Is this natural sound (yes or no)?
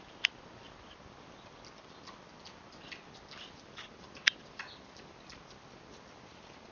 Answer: yes